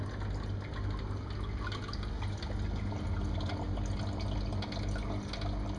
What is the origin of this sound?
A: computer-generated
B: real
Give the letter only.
B